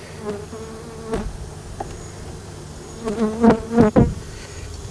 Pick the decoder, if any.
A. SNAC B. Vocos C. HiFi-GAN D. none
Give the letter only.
D